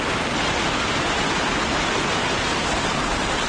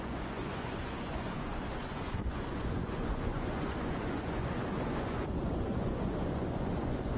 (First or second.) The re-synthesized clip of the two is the second